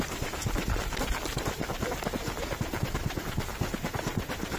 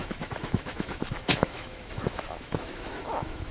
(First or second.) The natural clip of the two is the first